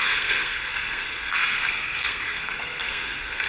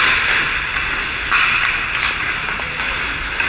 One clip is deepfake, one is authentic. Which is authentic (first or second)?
second